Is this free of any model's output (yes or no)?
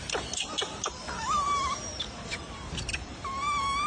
no